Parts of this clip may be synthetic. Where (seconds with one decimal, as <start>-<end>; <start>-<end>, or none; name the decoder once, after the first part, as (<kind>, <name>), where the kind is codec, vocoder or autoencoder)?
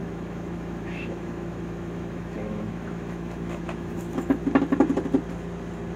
0.0-4.4 (autoencoder, DAC-VAE)